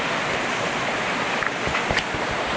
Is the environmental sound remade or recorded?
recorded